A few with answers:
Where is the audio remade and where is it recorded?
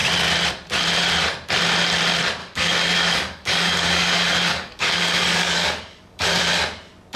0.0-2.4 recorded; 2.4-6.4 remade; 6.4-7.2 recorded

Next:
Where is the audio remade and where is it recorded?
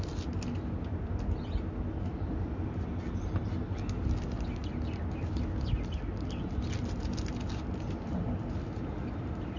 0.0-9.6 recorded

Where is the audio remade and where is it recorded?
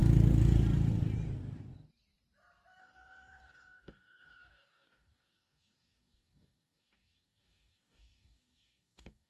0.0-2.8 recorded; 2.8-9.3 remade